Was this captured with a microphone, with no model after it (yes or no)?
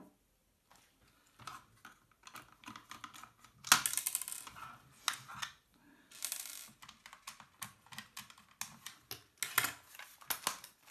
yes